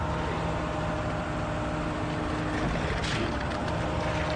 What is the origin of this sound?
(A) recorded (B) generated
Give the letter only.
A